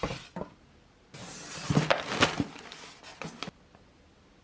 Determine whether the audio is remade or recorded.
recorded